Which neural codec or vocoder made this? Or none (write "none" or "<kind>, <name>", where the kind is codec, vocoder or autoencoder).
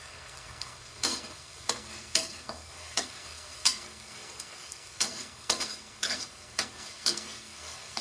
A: codec, SNAC